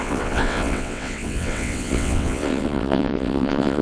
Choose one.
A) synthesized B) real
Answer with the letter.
A